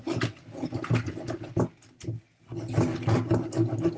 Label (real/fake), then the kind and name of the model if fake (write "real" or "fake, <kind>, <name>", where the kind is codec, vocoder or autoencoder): real